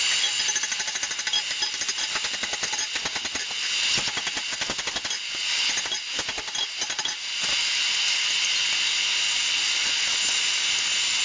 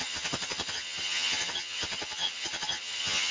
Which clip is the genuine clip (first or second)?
first